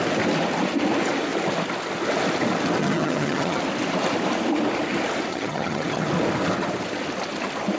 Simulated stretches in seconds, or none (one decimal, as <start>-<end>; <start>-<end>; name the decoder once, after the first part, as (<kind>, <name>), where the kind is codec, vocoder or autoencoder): 2.8-3.6 (vocoder, HiFi-GAN); 5.3-6.1